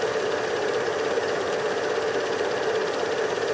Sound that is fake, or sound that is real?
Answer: real